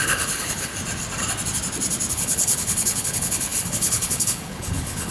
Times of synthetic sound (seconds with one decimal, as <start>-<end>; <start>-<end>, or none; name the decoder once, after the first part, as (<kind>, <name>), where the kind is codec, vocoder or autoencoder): 0.0-0.7 (codec, HILCodec); 2.1-5.1